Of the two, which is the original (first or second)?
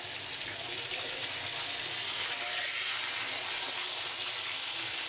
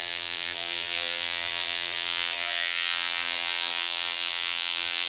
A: first